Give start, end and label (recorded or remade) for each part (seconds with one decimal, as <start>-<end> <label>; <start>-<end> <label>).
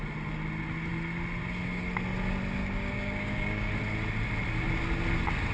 0.0-2.6 recorded; 2.6-3.7 remade; 3.7-5.5 recorded